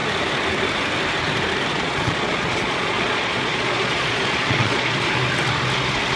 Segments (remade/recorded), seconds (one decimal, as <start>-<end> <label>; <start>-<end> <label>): 0.0-1.7 recorded; 1.7-5.1 remade; 5.1-6.2 recorded